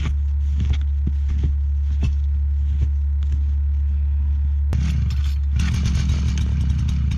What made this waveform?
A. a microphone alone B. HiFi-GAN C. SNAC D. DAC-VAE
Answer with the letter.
A